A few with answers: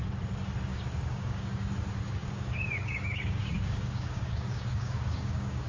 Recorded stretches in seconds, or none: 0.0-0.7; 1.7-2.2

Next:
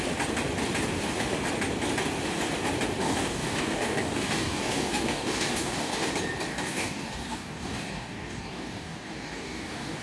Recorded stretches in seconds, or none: 0.0-3.0; 6.1-6.5

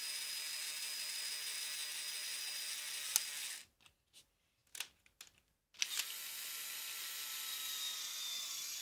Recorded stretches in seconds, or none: 0.0-8.8

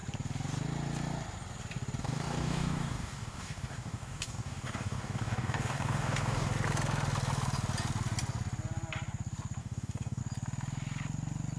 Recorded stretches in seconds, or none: 0.0-2.0; 6.5-9.6; 10.2-11.6

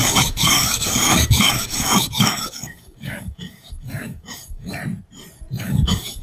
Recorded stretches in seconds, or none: 4.8-5.6